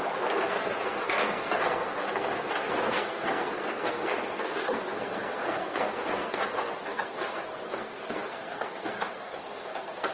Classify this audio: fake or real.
fake